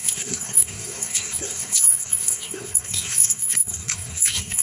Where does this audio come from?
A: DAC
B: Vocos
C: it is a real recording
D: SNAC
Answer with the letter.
D